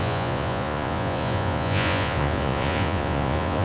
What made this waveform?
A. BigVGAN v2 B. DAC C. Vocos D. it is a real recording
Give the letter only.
C